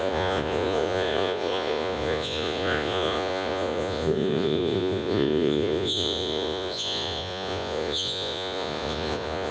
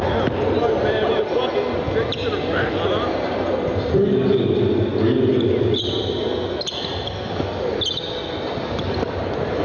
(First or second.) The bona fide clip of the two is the second